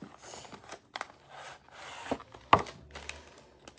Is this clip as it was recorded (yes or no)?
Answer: yes